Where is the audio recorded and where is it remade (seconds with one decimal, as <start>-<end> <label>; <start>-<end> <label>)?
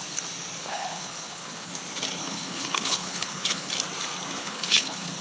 0.0-0.6 recorded; 0.6-1.7 remade; 1.7-2.2 recorded; 2.2-3.7 remade; 3.7-4.4 recorded; 4.4-5.2 remade